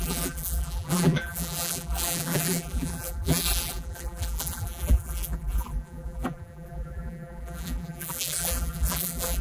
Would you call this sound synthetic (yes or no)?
yes